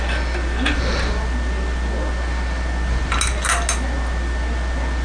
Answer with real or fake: real